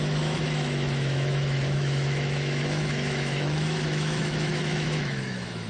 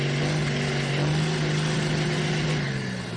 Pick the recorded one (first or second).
second